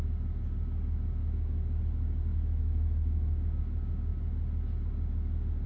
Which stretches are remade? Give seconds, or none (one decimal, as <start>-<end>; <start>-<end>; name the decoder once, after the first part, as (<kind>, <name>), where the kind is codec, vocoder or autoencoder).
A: 1.2-1.8 (autoencoder, DAC-VAE); 2.3-3.6